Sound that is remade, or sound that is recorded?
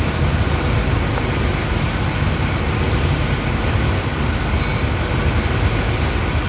recorded